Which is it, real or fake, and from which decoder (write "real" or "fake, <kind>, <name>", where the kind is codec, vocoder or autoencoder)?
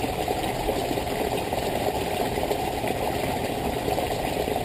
real